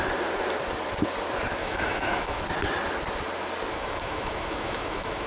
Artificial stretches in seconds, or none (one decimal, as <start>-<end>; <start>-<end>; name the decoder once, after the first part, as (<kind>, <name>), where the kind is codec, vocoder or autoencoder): 1.6-2.4 (autoencoder, DAC-VAE); 3.7-5.3